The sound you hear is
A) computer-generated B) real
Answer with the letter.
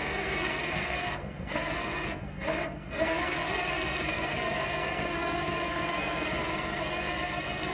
A